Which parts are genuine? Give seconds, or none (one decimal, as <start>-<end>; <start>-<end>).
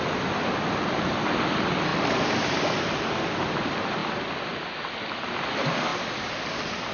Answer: 4.0-4.8